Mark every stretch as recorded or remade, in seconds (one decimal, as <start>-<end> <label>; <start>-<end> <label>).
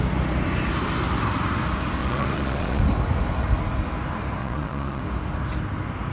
0.0-2.0 recorded; 2.0-2.8 remade; 2.8-4.4 recorded; 4.4-5.0 remade; 5.0-6.1 recorded